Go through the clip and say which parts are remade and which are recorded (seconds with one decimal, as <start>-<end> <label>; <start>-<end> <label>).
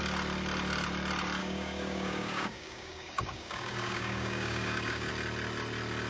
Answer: 0.0-1.4 recorded; 1.4-5.1 remade; 5.1-6.1 recorded